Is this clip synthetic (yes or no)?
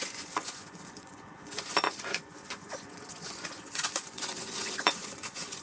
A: yes